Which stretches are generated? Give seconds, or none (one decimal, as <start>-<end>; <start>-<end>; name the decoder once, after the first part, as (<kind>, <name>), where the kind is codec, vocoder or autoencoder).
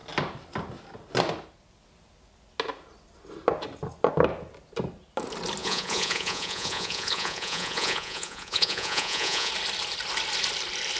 5.6-9.5 (vocoder, Vocos)